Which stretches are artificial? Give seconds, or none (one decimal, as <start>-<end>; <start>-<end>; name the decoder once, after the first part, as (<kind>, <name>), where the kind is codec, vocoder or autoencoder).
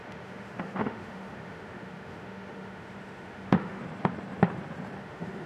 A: 0.0-3.8 (autoencoder, DAC-VAE); 5.0-5.5